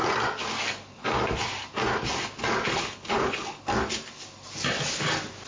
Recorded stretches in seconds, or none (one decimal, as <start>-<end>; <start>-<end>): 0.0-2.7; 3.6-5.5